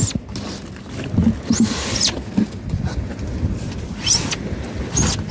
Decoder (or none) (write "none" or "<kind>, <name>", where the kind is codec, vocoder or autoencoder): none